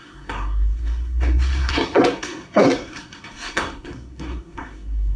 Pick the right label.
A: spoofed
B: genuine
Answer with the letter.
A